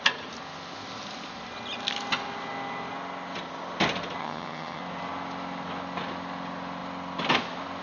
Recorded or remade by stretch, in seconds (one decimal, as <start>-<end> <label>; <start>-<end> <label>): 0.0-4.2 recorded; 4.2-4.8 remade; 4.8-7.8 recorded